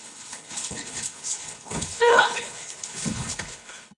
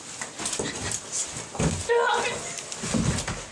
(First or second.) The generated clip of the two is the first